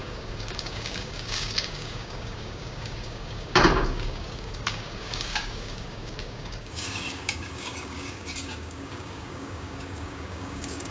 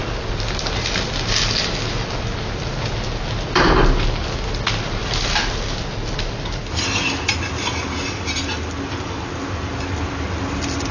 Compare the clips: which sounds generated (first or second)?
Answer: first